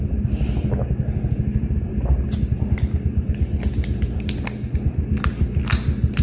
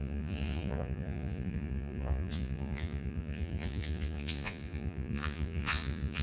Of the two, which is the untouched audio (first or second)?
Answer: first